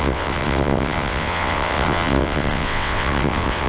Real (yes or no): no